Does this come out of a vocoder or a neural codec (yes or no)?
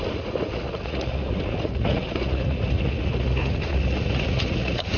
yes